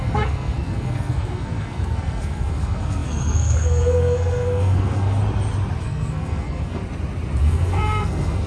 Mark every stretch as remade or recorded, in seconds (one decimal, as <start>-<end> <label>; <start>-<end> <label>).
0.0-5.2 remade; 5.2-5.8 recorded; 5.8-6.8 remade; 6.8-7.4 recorded; 7.4-8.5 remade